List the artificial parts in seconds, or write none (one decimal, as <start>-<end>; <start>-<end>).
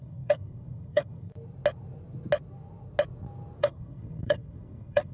0.0-1.3; 3.6-5.1